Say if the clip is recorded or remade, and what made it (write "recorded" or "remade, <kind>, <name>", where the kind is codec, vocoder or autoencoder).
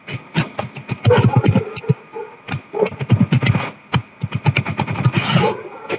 recorded